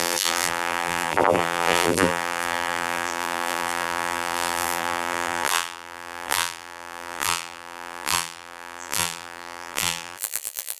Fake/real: fake